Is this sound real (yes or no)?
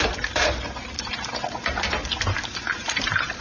yes